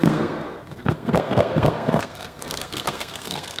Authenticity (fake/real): fake